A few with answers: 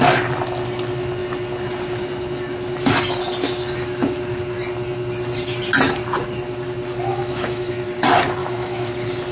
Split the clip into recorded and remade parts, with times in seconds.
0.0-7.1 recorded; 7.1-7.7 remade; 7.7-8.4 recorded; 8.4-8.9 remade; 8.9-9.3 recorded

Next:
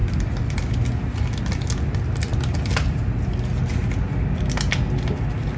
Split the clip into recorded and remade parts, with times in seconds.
0.0-5.6 recorded

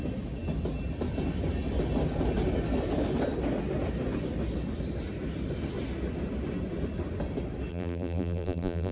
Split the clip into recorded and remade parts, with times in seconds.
0.0-7.7 recorded; 7.7-8.9 remade

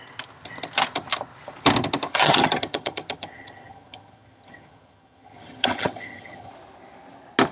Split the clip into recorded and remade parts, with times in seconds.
0.0-2.1 recorded; 2.1-6.5 remade; 6.5-7.5 recorded

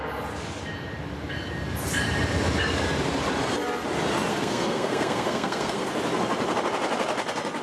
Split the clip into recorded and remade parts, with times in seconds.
0.0-4.3 recorded; 4.3-5.9 remade; 5.9-7.6 recorded

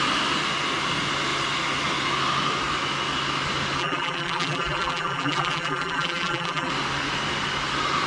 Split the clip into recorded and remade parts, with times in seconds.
0.0-3.8 recorded; 3.8-6.7 remade; 6.7-8.1 recorded

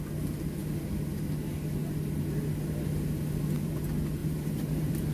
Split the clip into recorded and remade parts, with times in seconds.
0.0-4.2 recorded; 4.2-5.1 remade